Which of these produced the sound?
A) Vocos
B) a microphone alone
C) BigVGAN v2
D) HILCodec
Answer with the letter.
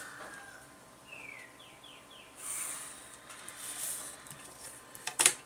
C